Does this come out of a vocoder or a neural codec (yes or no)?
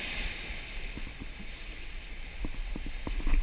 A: no